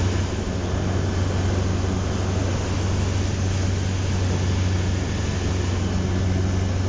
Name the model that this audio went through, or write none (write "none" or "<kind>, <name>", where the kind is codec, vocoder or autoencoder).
none